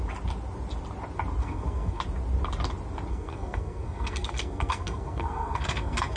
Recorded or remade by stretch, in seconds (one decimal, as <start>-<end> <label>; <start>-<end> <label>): 0.0-1.4 recorded; 1.4-2.0 remade; 2.0-3.1 recorded; 3.1-6.2 remade